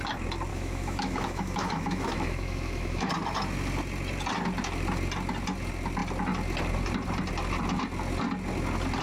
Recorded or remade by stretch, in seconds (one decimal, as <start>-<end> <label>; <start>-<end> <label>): 0.0-0.5 recorded; 0.5-3.1 remade; 3.1-9.0 recorded